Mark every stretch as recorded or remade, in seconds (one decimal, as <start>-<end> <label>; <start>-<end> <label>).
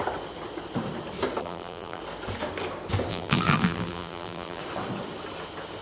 0.0-1.4 recorded; 1.4-2.0 remade; 2.0-3.1 recorded; 3.1-4.6 remade; 4.6-5.8 recorded